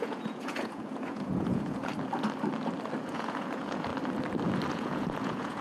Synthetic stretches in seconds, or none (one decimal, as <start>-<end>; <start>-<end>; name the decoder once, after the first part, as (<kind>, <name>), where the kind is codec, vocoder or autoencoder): 0.0-1.9 (vocoder, Vocos); 3.0-3.9; 4.7-5.6